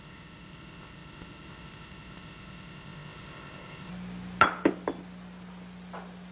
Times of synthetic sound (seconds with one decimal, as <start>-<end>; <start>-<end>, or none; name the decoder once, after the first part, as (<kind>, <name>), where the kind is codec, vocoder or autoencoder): 0.0-3.9 (codec, ZipCodec)